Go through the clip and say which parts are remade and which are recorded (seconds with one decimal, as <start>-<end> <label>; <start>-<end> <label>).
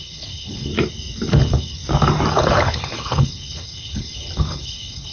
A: 0.0-0.7 remade; 0.7-1.3 recorded; 1.3-1.8 remade; 1.8-2.3 recorded; 2.3-5.1 remade